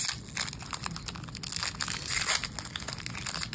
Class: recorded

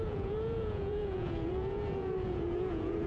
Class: remade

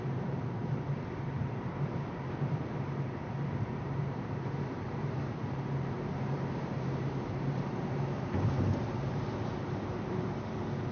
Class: remade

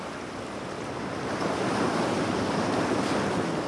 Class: recorded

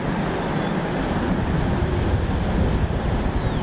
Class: recorded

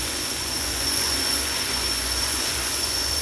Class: remade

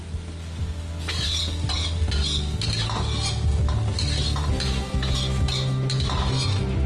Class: recorded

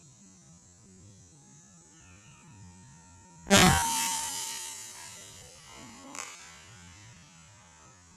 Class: recorded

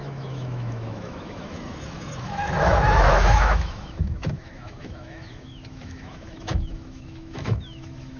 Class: remade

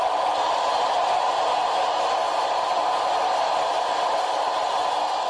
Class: recorded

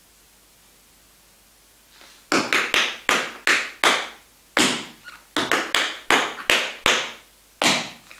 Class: recorded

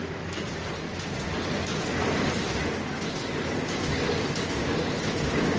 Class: recorded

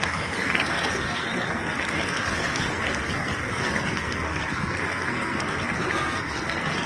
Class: remade